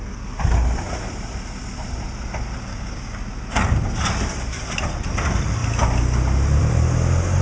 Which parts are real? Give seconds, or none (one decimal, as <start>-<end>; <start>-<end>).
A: 0.0-2.7; 3.2-7.4